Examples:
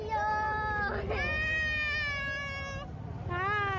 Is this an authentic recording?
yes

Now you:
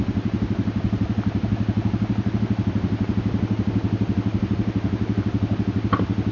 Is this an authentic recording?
yes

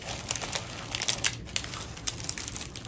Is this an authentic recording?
yes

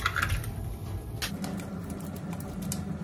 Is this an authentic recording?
yes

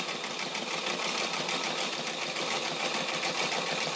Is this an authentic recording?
yes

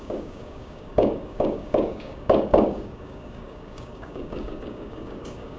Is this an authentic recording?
no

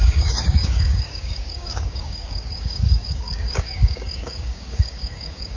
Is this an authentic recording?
no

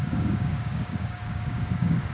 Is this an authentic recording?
no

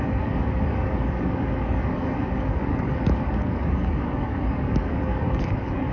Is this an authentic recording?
no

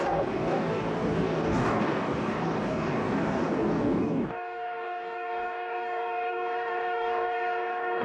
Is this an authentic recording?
no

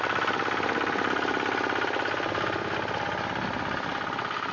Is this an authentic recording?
yes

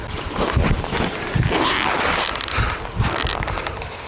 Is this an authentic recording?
yes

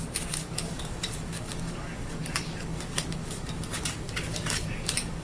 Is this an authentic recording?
no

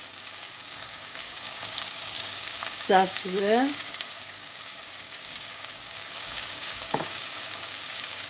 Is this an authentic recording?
no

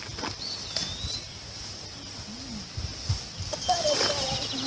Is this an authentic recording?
yes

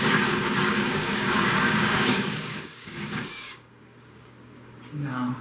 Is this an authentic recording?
no